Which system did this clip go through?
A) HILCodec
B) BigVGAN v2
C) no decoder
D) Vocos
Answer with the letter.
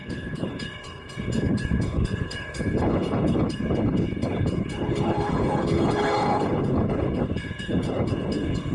A